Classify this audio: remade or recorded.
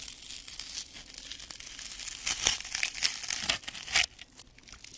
recorded